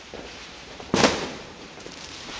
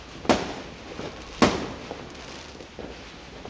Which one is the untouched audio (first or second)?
second